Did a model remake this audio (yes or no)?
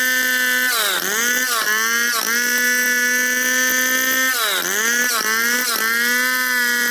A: no